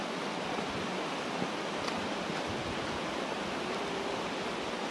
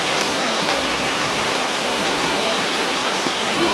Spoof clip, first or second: second